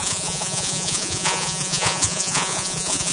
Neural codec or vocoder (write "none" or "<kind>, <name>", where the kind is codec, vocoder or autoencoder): vocoder, Vocos